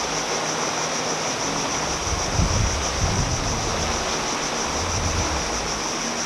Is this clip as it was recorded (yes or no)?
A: yes